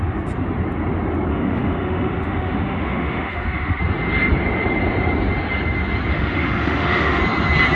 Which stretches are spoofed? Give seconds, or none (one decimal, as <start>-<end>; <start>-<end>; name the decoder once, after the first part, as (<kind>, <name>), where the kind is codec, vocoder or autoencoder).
1.3-3.8 (autoencoder, DAC-VAE); 6.1-7.2